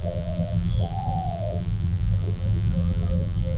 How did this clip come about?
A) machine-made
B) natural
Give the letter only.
A